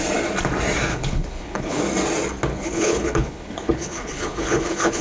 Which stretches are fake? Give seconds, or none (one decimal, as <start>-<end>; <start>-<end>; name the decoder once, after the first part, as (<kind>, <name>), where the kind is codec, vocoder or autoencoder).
0.9-1.8 (codec, HILCodec); 2.5-5.0